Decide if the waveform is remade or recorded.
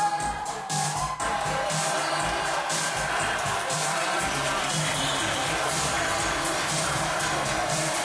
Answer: remade